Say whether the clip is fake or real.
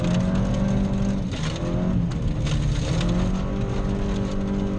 real